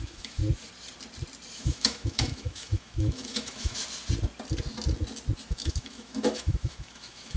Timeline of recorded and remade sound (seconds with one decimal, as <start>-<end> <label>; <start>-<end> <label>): 0.0-0.4 remade; 0.4-1.6 recorded; 1.6-3.8 remade; 3.8-5.5 recorded; 5.5-7.4 remade